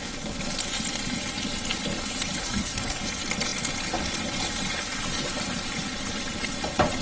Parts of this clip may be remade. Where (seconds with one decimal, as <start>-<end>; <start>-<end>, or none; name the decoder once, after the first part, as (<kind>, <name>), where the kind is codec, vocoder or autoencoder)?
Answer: 2.4-3.0 (codec, SNAC)